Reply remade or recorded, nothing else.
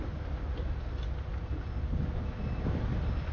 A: recorded